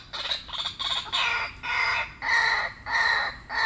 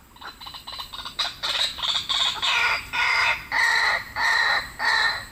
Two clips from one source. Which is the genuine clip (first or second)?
first